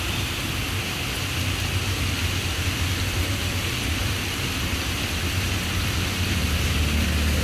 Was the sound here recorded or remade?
recorded